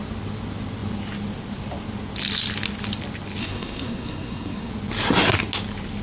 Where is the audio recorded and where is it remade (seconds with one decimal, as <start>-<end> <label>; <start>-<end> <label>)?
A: 0.0-3.4 recorded; 3.4-4.7 remade; 4.7-6.0 recorded